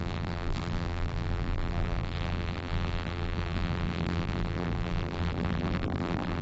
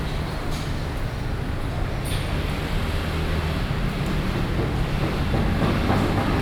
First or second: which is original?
second